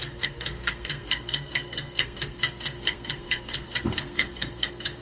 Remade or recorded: remade